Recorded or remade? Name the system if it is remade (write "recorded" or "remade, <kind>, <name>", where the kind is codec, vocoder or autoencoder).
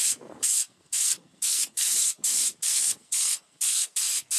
remade, codec, SNAC